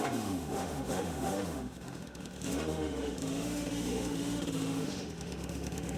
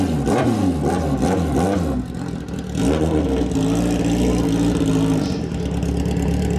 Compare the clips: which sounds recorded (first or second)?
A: second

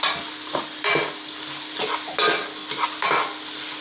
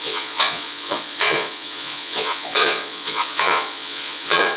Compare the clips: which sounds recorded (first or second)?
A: first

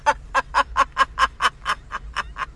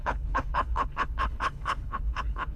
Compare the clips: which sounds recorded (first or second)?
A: first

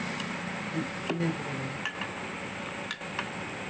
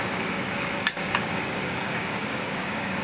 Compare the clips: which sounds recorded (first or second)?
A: first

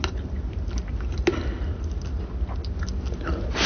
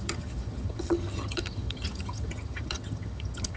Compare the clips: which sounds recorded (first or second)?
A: first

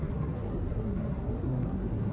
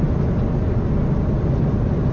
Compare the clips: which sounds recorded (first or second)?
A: second